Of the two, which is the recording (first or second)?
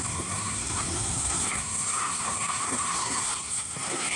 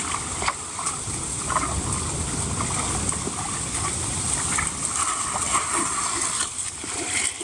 second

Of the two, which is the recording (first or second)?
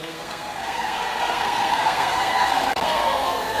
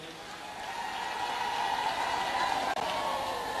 second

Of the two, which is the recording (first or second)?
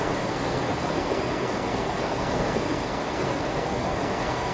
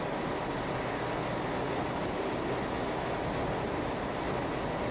second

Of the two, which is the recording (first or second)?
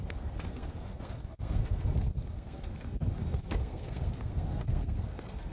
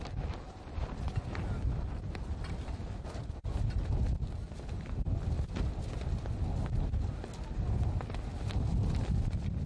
second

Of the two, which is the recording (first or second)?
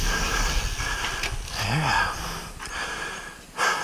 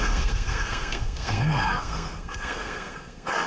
first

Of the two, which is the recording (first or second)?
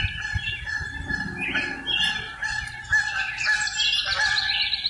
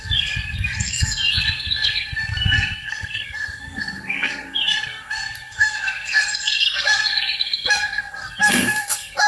first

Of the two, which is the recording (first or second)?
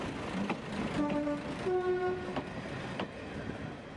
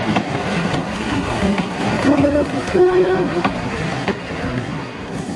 first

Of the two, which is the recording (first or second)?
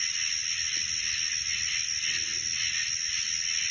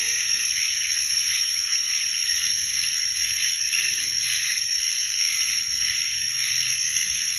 first